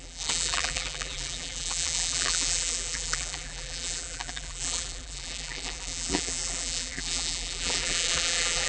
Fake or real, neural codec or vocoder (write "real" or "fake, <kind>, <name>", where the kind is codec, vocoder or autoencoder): fake, vocoder, BigVGAN v2